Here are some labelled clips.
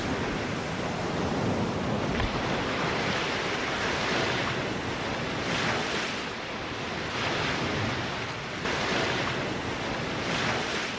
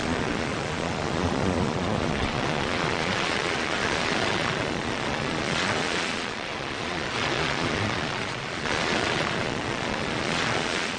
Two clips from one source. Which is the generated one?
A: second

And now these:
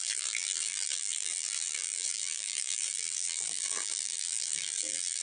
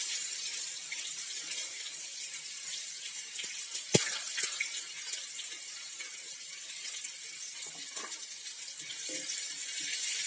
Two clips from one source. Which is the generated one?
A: first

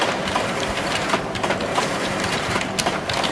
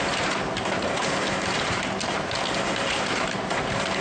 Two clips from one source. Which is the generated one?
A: first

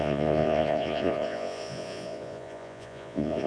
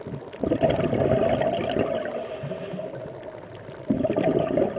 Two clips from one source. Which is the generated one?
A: first